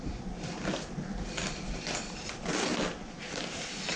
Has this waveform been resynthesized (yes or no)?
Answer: no